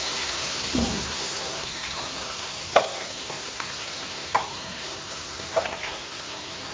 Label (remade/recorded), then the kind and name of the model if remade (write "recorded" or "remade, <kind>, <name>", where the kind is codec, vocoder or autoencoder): remade, codec, SNAC